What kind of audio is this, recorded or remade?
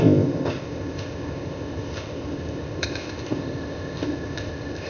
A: remade